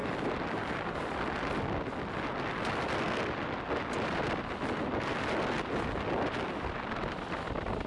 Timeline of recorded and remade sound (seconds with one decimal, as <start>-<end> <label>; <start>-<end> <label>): 0.0-7.9 recorded